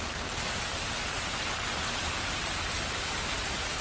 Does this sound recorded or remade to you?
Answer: recorded